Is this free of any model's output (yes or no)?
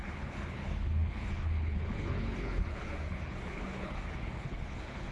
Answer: no